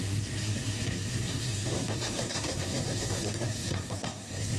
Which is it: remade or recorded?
remade